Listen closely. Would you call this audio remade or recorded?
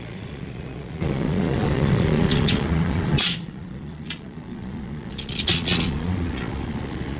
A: remade